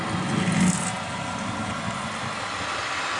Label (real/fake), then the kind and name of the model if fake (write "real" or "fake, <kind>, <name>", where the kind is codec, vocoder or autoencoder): real